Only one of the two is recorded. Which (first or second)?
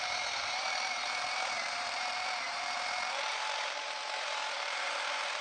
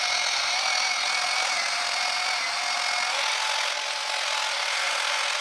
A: second